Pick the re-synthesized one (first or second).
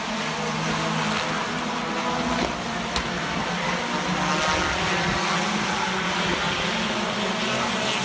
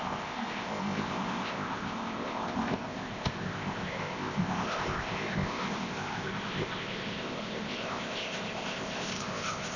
second